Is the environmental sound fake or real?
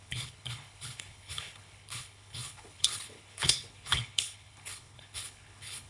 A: fake